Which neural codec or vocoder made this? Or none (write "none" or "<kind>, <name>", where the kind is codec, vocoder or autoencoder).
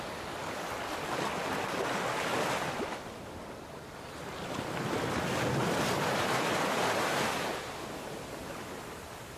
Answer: none